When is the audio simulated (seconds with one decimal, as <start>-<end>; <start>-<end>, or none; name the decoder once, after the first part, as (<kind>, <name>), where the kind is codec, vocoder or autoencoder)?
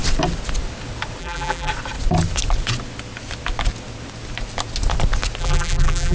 1.2-1.7 (vocoder, BigVGAN v2); 5.4-6.1